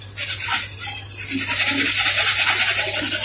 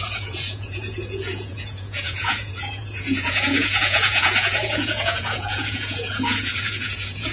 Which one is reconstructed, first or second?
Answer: second